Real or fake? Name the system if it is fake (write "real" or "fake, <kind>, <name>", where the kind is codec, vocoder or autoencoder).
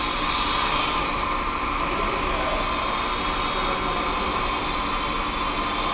real